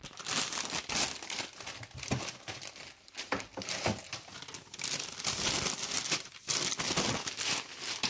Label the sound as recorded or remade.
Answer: recorded